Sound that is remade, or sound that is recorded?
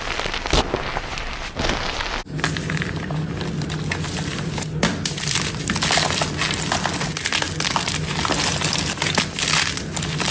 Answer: recorded